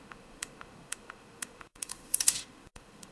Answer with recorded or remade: remade